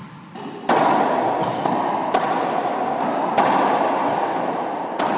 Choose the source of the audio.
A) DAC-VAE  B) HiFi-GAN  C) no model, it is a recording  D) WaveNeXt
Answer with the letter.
C